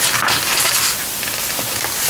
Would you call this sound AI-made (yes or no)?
no